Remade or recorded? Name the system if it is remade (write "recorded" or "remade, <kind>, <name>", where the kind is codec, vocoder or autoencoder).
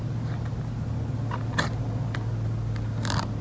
recorded